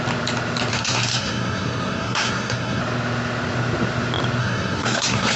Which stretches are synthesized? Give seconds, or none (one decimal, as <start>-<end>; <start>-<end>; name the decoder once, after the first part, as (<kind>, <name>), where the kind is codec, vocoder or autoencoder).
0.7-2.8 (codec, SNAC); 4.4-5.4